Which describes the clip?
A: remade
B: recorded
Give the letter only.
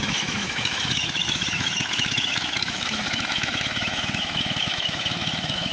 A